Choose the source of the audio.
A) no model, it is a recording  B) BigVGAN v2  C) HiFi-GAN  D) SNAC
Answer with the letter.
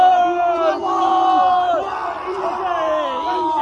A